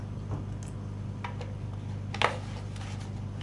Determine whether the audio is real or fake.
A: real